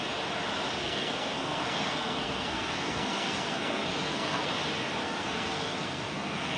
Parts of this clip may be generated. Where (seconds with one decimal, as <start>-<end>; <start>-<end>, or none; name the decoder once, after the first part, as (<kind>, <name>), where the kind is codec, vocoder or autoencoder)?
0.8-4.5 (codec, SNAC); 5.0-6.6